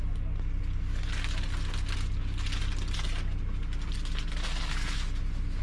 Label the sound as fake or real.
real